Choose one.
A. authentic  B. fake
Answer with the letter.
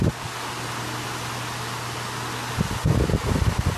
A